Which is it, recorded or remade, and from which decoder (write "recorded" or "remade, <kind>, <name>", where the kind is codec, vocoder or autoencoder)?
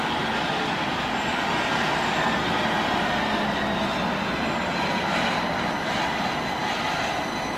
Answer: recorded